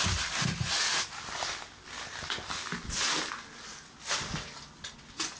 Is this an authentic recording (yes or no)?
yes